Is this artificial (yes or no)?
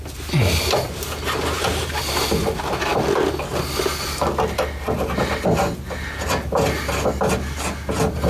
no